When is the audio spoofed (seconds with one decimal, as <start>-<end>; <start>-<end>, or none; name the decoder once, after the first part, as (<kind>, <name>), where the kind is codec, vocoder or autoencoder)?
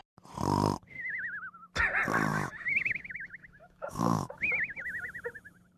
2.3-4.4 (autoencoder, DAC-VAE)